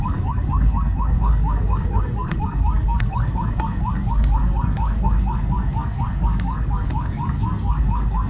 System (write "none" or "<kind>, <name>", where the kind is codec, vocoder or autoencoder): codec, SNAC